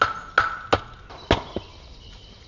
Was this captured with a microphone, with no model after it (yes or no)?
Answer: yes